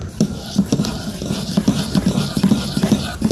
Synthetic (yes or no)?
yes